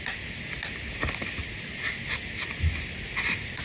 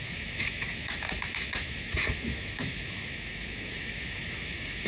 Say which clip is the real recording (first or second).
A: first